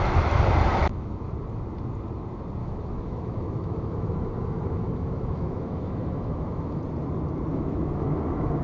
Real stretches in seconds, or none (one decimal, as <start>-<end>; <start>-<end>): 0.0-0.8; 1.3-2.6; 6.8-7.5